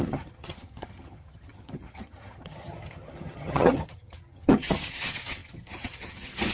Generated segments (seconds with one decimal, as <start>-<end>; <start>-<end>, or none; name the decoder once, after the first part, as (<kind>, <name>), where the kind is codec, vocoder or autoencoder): 0.0-6.5 (vocoder, HiFi-GAN)